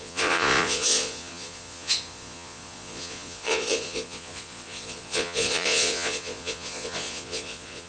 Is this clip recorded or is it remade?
remade